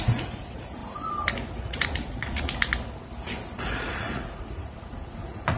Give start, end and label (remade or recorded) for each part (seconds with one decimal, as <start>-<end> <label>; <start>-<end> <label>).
0.0-0.8 remade; 0.8-1.5 recorded; 1.5-2.7 remade; 2.7-3.6 recorded; 3.6-5.6 remade